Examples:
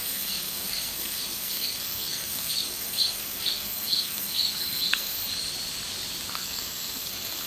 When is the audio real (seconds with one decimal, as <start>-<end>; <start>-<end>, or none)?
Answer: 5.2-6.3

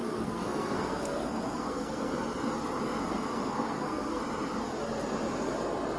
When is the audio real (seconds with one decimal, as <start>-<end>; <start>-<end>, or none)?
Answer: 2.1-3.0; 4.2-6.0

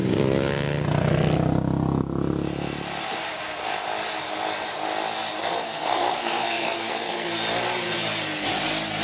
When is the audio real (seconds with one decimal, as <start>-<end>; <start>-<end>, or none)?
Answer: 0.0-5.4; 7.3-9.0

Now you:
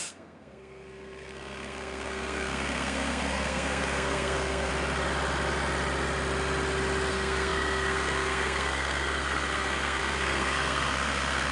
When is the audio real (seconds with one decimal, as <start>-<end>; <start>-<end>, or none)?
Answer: 4.7-7.1

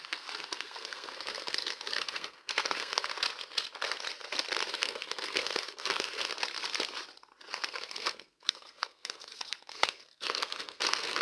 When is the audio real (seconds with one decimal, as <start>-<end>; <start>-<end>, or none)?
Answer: 3.1-4.7; 6.3-7.5

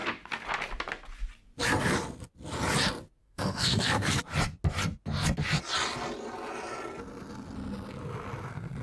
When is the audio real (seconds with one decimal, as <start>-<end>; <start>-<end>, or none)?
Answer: 0.0-3.2; 4.2-8.8

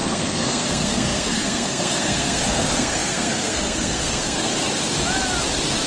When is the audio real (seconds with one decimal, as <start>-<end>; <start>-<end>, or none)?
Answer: 4.5-5.9

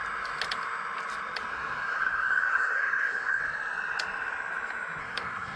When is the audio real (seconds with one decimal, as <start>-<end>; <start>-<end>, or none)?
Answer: 0.0-1.5; 3.4-5.0